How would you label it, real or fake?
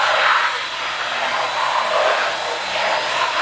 real